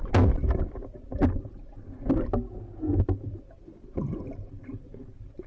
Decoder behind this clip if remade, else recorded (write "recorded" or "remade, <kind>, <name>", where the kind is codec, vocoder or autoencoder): recorded